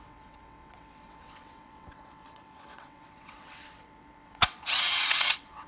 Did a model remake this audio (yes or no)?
yes